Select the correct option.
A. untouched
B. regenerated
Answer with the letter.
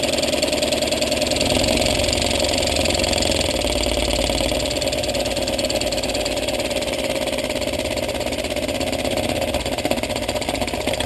A